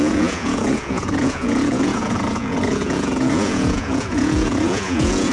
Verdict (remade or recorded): remade